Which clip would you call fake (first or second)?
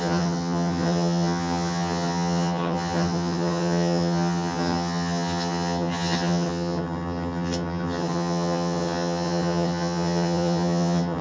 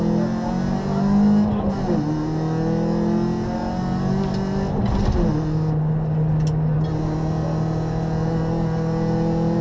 first